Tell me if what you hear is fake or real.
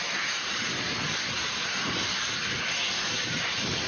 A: real